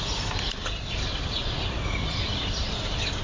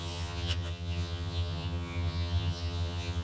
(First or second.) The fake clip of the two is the second